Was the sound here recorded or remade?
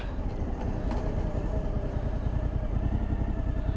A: recorded